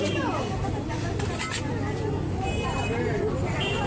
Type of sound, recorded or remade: recorded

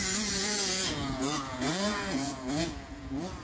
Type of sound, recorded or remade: remade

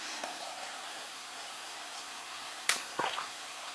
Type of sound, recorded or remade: remade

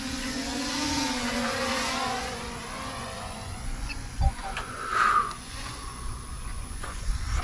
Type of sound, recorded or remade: remade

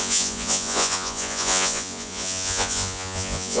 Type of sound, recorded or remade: remade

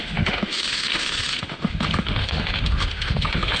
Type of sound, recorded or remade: remade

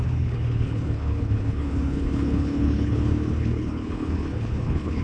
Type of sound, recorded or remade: remade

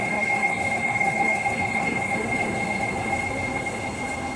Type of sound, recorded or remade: remade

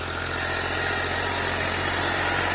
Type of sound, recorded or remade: recorded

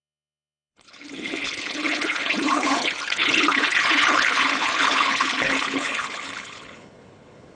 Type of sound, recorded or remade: remade